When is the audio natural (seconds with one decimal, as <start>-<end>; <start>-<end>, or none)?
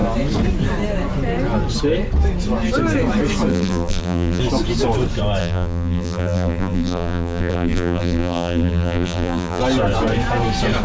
0.0-3.5; 4.4-5.4; 9.6-10.8